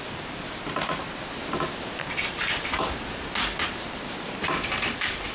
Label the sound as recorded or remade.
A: recorded